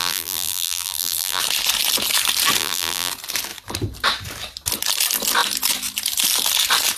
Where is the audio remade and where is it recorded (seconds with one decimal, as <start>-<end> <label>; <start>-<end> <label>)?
0.0-1.4 remade; 1.4-2.6 recorded; 2.6-3.1 remade; 3.1-7.0 recorded